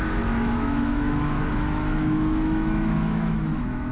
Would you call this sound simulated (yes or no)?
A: yes